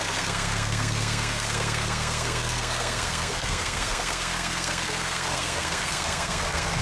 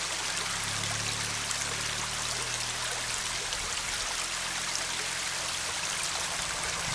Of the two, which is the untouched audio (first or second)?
second